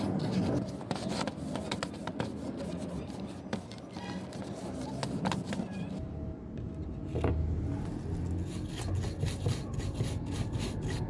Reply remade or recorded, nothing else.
recorded